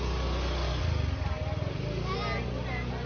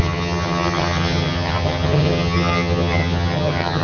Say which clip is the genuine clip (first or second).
first